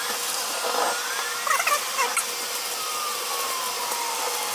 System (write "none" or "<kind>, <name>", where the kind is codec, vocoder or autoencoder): none